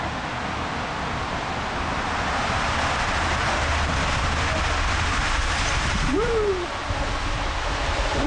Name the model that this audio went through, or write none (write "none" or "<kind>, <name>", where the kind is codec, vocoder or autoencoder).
vocoder, BigVGAN v2